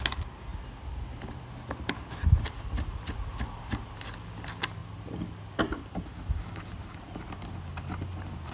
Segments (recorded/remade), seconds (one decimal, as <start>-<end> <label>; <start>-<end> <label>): 0.0-0.5 recorded; 0.5-1.4 remade; 1.4-8.5 recorded